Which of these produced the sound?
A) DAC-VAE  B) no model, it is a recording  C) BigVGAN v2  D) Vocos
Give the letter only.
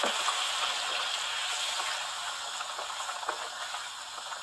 B